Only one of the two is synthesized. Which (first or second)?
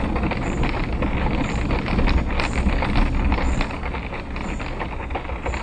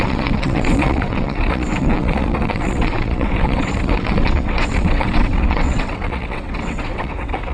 second